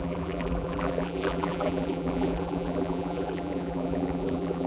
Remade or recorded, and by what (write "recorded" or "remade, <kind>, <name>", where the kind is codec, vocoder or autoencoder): remade, vocoder, BigVGAN v2